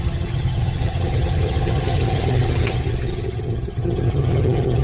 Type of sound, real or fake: fake